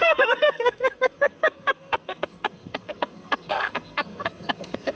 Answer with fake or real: fake